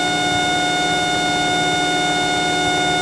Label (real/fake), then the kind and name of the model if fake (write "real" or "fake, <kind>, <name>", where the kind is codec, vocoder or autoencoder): real